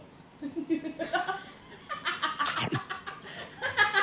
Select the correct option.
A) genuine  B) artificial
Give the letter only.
A